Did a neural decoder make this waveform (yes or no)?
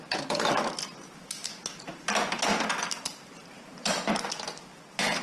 no